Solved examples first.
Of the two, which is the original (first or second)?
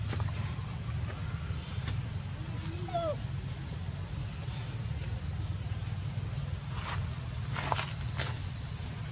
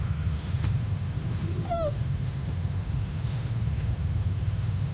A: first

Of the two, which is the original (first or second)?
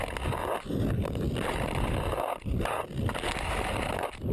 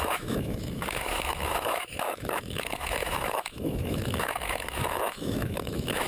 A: first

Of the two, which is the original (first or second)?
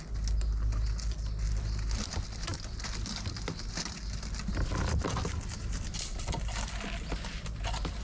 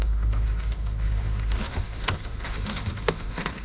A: first